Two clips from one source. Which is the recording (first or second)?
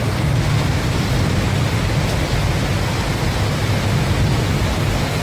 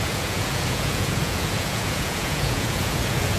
first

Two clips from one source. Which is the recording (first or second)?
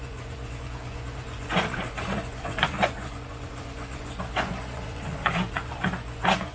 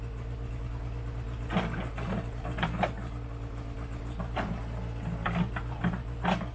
second